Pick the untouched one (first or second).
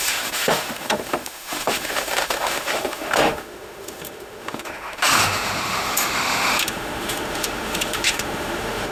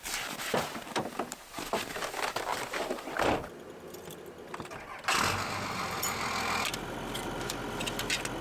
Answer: second